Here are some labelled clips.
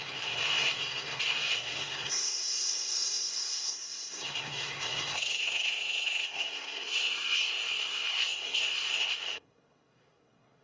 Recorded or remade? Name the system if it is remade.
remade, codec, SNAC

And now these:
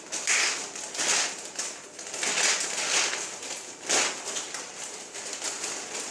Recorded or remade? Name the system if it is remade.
recorded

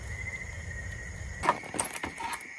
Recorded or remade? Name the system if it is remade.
recorded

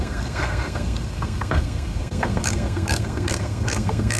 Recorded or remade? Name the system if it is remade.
remade, codec, SNAC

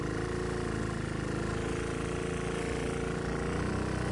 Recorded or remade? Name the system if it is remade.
recorded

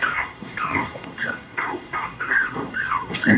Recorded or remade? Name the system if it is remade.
remade, codec, SNAC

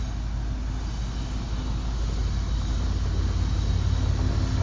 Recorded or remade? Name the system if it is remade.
recorded